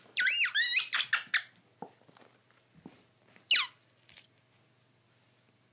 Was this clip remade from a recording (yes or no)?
no